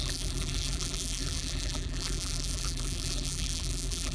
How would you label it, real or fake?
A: fake